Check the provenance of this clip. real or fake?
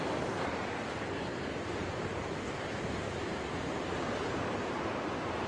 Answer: real